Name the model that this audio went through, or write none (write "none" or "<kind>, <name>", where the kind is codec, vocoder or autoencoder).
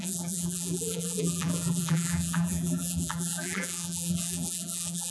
vocoder, BigVGAN v2